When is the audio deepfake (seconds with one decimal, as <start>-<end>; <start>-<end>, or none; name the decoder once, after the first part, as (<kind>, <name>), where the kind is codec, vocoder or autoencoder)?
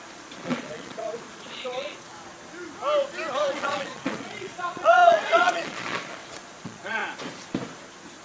0.0-2.1 (vocoder, Vocos); 3.3-7.0